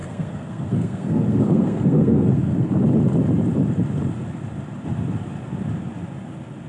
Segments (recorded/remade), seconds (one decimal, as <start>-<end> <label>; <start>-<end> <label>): 0.0-2.7 remade; 2.7-6.7 recorded